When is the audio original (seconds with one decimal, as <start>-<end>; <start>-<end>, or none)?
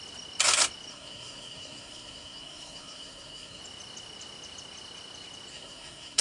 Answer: 0.0-0.9; 3.6-5.5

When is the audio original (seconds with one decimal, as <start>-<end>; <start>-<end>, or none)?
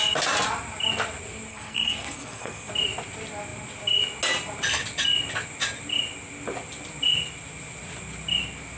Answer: 0.0-1.5; 2.7-8.8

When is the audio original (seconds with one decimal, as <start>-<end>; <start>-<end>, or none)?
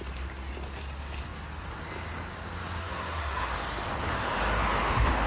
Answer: 0.0-2.8; 3.5-5.3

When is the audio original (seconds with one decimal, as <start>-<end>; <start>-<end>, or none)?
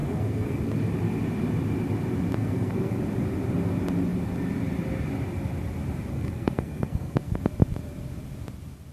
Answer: 0.6-2.4; 3.0-6.1; 7.4-8.9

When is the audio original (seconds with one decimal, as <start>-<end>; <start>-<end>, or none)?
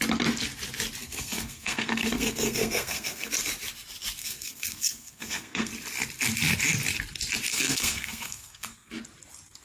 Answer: 0.0-1.0; 3.3-4.2; 5.7-7.5; 8.9-9.6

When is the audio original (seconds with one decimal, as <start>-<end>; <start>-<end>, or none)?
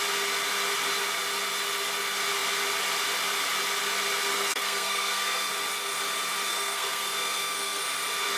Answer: 0.0-4.3; 5.5-6.5; 7.8-8.4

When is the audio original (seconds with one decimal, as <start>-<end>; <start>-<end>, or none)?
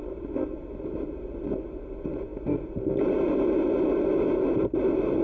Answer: 0.0-5.2